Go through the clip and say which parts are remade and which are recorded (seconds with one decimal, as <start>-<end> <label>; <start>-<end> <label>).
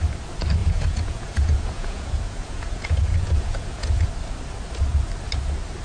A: 0.0-0.6 recorded; 0.6-4.1 remade; 4.1-5.8 recorded